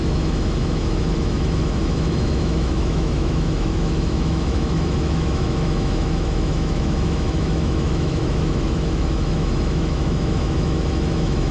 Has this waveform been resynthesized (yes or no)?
yes